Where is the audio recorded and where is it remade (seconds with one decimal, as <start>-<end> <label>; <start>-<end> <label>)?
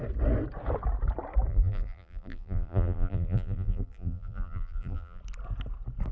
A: 0.0-1.5 recorded; 1.5-5.2 remade; 5.2-6.1 recorded